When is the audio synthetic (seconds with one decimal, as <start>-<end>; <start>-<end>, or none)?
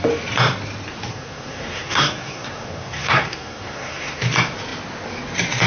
1.1-4.2